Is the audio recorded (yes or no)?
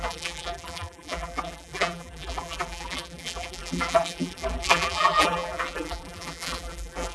no